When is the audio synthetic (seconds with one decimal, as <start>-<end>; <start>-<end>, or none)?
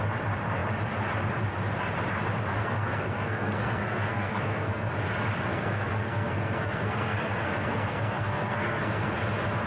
2.6-4.9; 5.5-9.1